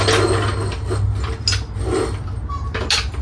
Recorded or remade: recorded